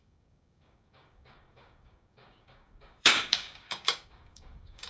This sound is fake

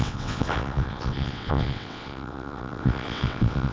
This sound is fake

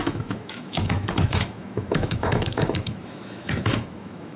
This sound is fake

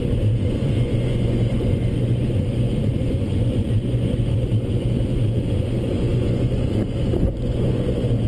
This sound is fake